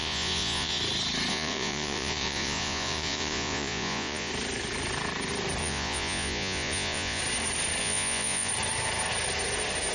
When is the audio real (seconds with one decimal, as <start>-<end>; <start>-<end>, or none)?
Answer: 0.8-1.3; 4.3-5.6; 7.2-7.8; 8.5-9.9